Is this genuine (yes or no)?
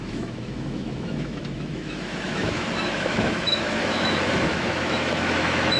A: no